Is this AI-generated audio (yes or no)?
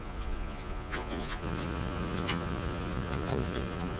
yes